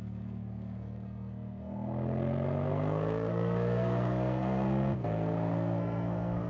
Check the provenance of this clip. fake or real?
fake